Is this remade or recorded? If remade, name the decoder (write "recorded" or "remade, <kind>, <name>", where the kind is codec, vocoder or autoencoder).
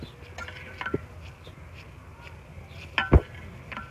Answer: recorded